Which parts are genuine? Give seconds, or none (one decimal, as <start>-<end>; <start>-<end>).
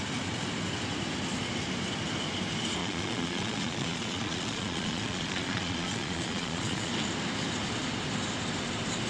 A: 0.0-2.8; 6.9-9.1